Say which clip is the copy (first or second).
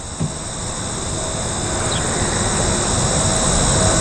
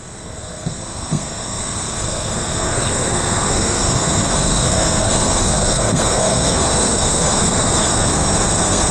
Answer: second